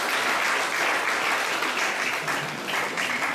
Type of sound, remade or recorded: recorded